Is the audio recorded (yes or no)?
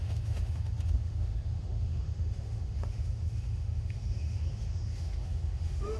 no